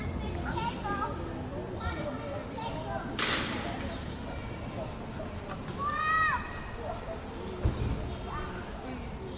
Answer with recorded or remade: recorded